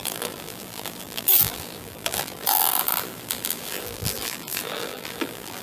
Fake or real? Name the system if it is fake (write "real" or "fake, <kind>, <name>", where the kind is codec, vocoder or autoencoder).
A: fake, vocoder, BigVGAN v2